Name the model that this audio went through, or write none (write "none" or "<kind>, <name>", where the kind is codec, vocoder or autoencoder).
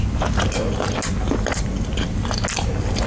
none